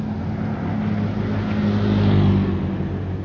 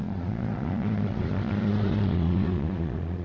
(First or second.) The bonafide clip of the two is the first